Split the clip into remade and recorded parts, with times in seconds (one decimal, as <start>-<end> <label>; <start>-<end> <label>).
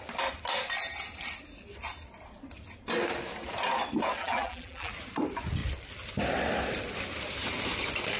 0.0-4.2 recorded; 4.2-4.9 remade; 4.9-8.2 recorded